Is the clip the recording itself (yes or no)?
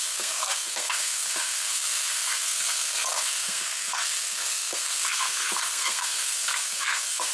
no